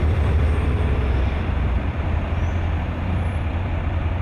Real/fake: fake